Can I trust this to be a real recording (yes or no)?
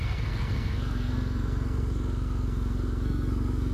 no